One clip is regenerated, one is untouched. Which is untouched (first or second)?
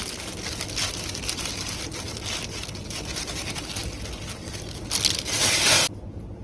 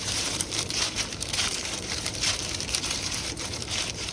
first